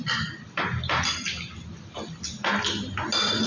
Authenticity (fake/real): real